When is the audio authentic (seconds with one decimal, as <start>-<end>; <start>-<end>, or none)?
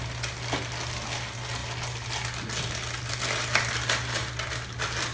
0.0-5.1